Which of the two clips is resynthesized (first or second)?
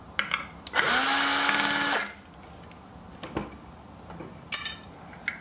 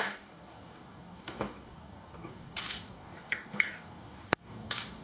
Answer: second